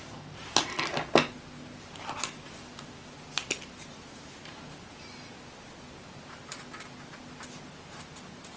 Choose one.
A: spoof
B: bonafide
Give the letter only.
B